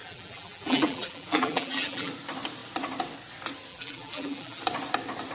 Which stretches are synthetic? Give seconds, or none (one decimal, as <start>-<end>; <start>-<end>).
0.0-2.1; 3.7-4.6